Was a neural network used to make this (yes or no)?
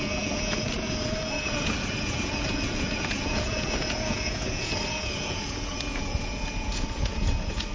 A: yes